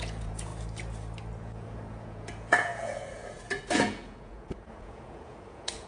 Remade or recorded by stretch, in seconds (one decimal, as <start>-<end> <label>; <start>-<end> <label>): 0.0-0.5 remade; 0.5-1.4 recorded; 1.4-5.9 remade